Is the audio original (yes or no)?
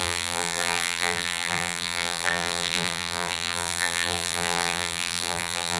no